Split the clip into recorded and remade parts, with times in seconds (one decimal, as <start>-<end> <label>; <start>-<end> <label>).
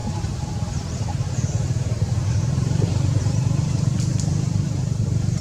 0.0-5.4 remade